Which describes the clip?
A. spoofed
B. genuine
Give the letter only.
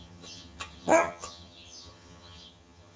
A